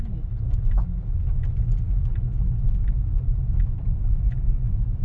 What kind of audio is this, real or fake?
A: real